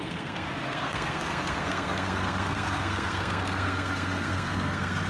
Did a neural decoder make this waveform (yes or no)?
yes